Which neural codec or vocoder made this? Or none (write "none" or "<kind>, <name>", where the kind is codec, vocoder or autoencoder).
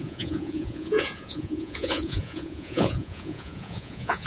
vocoder, Vocos